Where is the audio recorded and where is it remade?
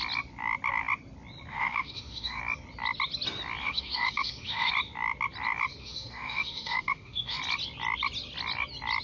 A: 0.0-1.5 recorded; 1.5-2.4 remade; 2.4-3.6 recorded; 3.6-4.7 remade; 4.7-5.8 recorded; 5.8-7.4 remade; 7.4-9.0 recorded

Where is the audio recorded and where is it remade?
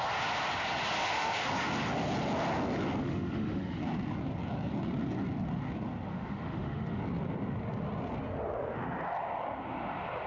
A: 0.0-1.0 recorded; 1.0-1.5 remade; 1.5-3.0 recorded; 3.0-3.8 remade; 3.8-6.1 recorded; 6.1-7.0 remade; 7.0-10.3 recorded